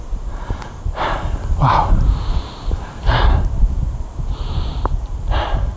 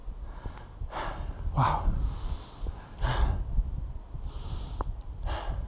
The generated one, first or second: first